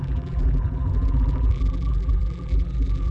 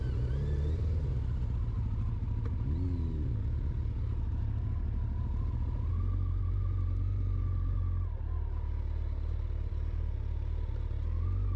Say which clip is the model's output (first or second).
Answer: first